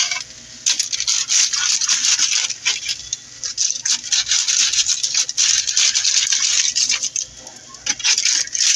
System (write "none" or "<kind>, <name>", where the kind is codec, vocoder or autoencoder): none